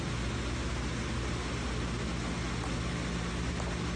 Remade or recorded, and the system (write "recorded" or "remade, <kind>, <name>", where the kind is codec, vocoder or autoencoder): recorded